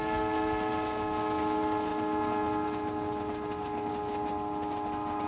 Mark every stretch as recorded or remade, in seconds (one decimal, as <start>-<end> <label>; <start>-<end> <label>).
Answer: 0.0-5.3 recorded